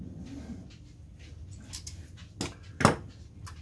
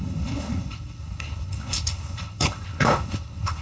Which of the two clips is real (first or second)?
first